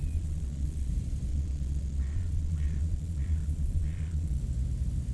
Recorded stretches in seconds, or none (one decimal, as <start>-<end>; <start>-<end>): 0.9-1.3; 4.4-5.1